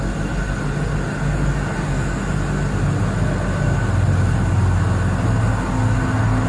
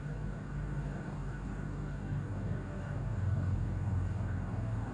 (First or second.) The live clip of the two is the first